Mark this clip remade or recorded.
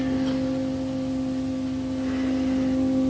recorded